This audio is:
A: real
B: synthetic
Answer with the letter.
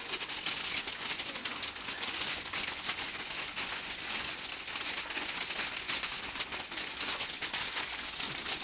B